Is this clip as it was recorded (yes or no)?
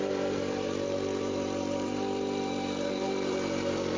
no